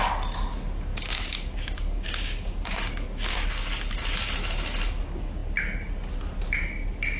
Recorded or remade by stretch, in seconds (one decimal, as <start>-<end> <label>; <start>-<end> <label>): 0.0-0.9 recorded; 0.9-3.4 remade; 3.4-7.2 recorded